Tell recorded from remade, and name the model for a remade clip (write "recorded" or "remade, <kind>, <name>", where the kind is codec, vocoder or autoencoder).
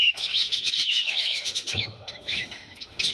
remade, autoencoder, DAC-VAE